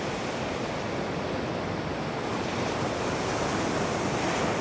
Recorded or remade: recorded